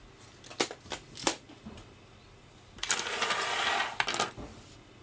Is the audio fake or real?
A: real